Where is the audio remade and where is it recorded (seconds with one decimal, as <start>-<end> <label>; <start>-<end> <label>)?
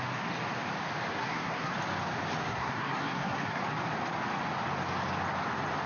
0.0-1.1 recorded; 1.1-1.7 remade; 1.7-2.4 recorded; 2.4-3.6 remade; 3.6-5.9 recorded